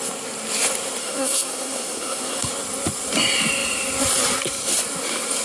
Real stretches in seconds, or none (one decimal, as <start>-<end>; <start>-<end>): 0.0-1.0; 2.5-5.4